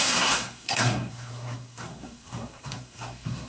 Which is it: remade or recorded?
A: remade